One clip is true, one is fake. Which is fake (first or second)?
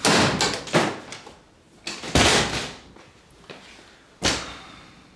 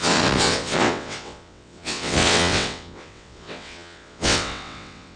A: second